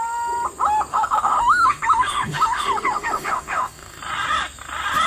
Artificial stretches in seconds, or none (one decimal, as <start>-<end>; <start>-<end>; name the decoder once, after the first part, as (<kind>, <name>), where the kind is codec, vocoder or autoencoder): 0.9-4.0 (autoencoder, DAC-VAE)